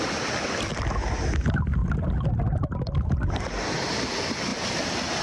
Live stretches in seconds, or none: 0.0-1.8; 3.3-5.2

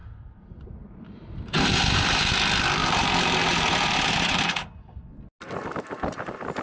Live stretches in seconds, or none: 2.3-2.8; 5.0-6.6

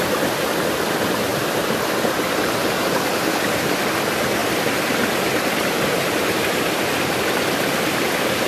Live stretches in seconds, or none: 0.0-8.5

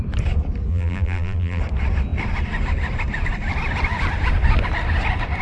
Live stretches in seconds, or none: 0.0-0.7; 1.6-5.4

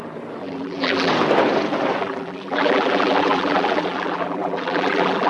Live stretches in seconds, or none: 0.0-0.4; 1.1-2.0

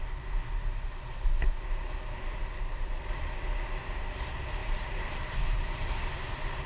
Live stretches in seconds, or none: 0.0-4.6; 5.9-6.7

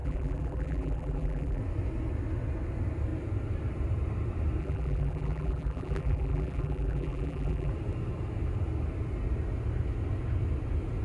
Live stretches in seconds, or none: 1.6-4.6; 7.7-11.0